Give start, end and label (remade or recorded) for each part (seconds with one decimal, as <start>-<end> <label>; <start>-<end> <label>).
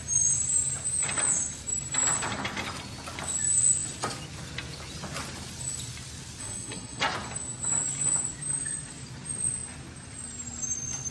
0.0-6.4 recorded; 6.4-7.0 remade; 7.0-11.1 recorded